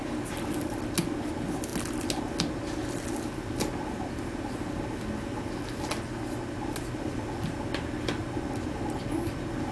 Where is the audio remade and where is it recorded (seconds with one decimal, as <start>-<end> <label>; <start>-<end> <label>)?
0.0-9.7 recorded

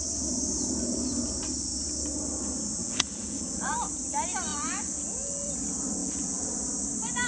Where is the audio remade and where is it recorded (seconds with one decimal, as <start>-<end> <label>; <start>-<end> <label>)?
0.0-2.8 recorded; 2.8-3.7 remade; 3.7-4.5 recorded; 4.5-5.5 remade; 5.5-6.0 recorded; 6.0-6.5 remade; 6.5-7.3 recorded